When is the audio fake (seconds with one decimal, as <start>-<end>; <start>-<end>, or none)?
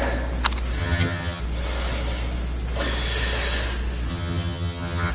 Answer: 0.8-1.4; 4.1-5.1